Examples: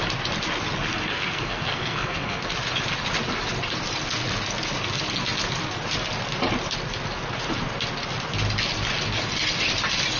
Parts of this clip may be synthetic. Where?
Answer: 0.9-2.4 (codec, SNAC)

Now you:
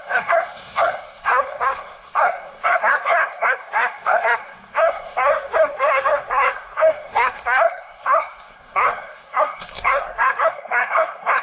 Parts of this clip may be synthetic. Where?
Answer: 0.0-11.4 (codec, SNAC)

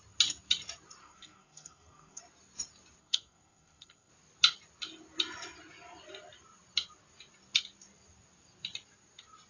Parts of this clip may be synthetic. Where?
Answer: 1.0-2.2 (codec, SNAC); 3.0-4.1

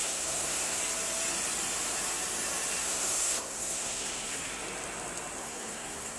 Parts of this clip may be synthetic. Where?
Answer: 0.0-0.8 (codec, SNAC); 2.8-4.5; 5.4-6.2